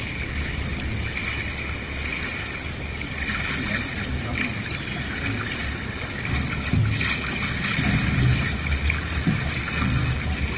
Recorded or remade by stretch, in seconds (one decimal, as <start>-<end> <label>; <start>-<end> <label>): 0.0-9.6 recorded; 9.6-10.2 remade; 10.2-10.6 recorded